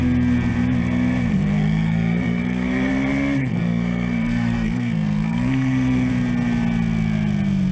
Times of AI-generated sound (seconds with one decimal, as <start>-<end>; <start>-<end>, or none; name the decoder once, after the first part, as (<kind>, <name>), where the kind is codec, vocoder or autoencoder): 1.3-2.9 (codec, SNAC); 3.4-6.1